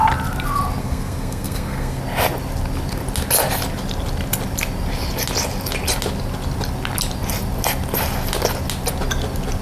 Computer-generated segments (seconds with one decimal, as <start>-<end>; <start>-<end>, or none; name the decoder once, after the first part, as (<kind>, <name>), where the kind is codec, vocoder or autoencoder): 0.8-2.0 (codec, SNAC)